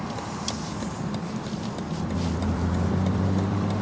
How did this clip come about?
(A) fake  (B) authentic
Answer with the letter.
A